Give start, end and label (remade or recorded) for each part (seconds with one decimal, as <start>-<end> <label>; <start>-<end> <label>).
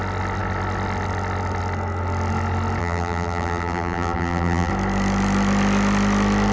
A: 0.0-2.8 recorded; 2.8-4.7 remade; 4.7-6.5 recorded